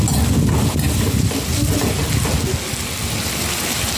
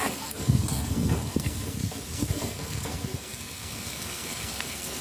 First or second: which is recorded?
first